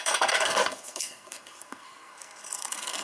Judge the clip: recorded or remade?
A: remade